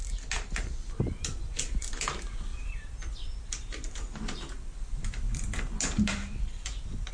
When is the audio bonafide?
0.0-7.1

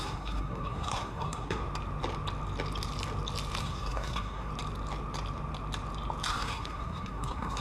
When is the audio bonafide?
1.6-3.6; 4.5-6.3